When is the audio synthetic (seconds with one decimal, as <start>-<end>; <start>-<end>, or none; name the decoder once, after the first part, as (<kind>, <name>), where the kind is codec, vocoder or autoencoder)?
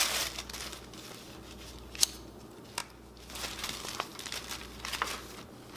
none